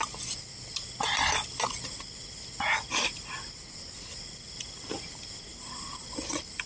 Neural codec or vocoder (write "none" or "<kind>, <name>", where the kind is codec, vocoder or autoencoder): none